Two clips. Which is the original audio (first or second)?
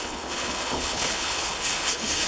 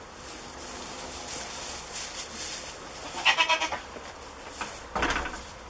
second